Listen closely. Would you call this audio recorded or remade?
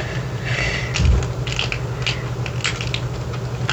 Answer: recorded